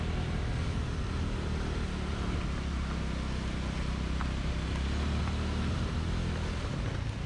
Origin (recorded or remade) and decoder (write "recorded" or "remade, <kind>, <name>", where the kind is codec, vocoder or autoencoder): recorded